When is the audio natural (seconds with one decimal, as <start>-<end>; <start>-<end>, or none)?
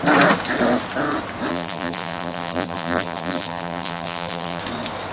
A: 0.0-1.5; 4.6-5.1